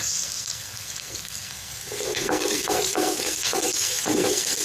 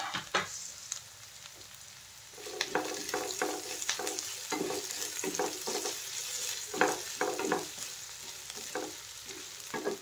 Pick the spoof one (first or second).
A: first